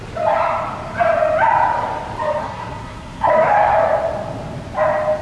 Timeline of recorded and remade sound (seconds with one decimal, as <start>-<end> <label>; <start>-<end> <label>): 0.0-2.4 recorded; 2.4-3.3 remade; 3.3-5.2 recorded

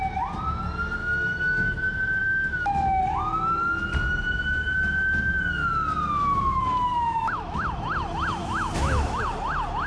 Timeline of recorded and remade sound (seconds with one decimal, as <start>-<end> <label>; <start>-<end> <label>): 0.0-1.0 recorded; 1.0-1.8 remade; 1.8-2.2 recorded; 2.2-3.0 remade; 3.0-6.2 recorded; 6.2-7.7 remade; 7.7-8.4 recorded; 8.4-9.2 remade; 9.2-9.9 recorded

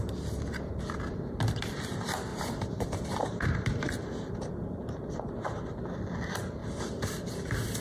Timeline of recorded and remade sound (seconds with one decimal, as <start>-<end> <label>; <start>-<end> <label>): 0.0-2.3 recorded; 2.3-4.5 remade; 4.5-6.6 recorded; 6.6-7.3 remade; 7.3-7.8 recorded

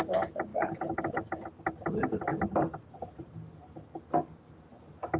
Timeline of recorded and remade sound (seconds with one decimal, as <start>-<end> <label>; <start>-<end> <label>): 0.0-0.5 recorded; 0.5-1.3 remade; 1.3-2.3 recorded; 2.3-3.3 remade; 3.3-5.2 recorded

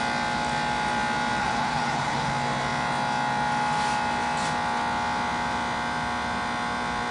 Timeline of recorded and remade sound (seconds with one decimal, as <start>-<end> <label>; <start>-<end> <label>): 0.0-1.4 recorded; 1.4-2.3 remade; 2.3-7.1 recorded